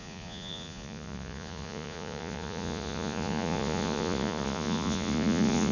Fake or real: fake